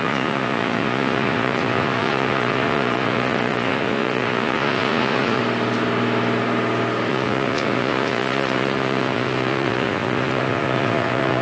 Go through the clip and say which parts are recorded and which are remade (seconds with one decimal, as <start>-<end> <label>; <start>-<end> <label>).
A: 0.0-5.4 remade; 5.4-7.1 recorded; 7.1-11.4 remade

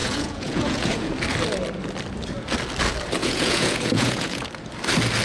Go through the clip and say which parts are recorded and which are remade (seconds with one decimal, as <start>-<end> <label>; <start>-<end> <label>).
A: 0.0-1.1 remade; 1.1-3.2 recorded; 3.2-4.5 remade; 4.5-5.2 recorded

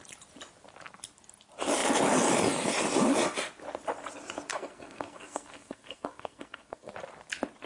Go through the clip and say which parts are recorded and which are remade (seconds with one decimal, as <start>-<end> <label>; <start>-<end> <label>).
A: 0.0-4.5 recorded; 4.5-6.9 remade; 6.9-7.7 recorded

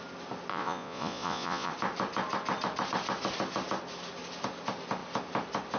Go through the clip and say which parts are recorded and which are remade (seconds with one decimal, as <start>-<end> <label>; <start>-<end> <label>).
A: 0.0-0.5 recorded; 0.5-1.7 remade; 1.7-5.8 recorded